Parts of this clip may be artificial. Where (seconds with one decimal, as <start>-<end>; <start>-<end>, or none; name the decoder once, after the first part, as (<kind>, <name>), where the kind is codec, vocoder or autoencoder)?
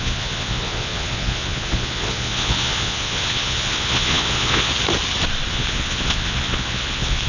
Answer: 0.0-4.7 (vocoder, Vocos); 5.5-7.3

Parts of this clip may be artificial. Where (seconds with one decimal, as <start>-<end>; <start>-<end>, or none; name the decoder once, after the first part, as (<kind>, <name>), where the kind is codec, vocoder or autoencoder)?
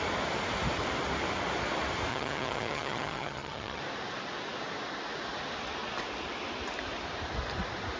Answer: 2.1-3.8 (vocoder, HiFi-GAN)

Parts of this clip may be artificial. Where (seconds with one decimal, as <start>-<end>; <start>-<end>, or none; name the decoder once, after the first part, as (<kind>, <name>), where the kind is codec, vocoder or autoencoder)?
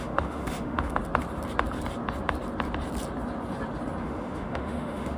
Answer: 0.0-1.0 (autoencoder, DAC-VAE); 4.0-5.2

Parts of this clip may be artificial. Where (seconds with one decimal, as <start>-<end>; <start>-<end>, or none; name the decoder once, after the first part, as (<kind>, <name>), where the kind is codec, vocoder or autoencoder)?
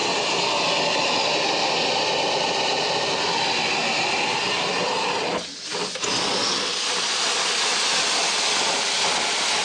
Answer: none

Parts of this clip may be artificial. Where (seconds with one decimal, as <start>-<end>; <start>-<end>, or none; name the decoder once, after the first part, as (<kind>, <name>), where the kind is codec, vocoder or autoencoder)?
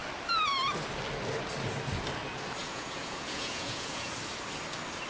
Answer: 2.6-4.1 (vocoder, Vocos)